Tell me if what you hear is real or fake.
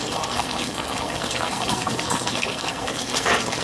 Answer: fake